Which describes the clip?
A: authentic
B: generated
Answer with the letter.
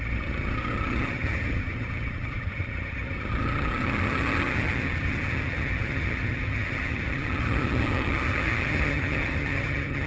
B